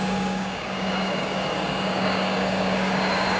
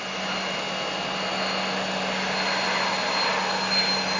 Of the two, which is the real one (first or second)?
second